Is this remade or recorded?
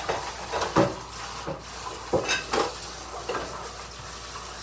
recorded